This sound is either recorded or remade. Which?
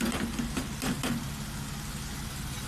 recorded